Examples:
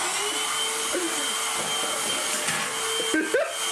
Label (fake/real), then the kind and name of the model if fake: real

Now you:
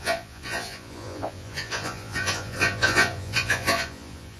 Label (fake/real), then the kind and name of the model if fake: fake, vocoder, Vocos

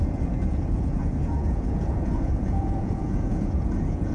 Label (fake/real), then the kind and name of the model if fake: fake, vocoder, Vocos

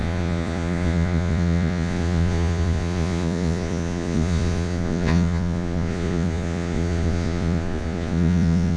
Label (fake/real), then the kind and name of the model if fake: fake, vocoder, Vocos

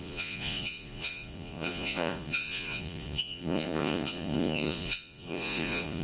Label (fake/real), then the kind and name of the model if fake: fake, vocoder, Vocos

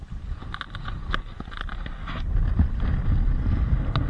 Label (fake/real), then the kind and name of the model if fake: real